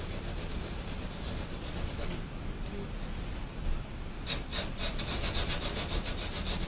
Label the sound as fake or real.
real